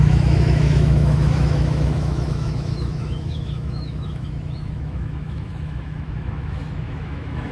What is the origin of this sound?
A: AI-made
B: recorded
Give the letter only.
A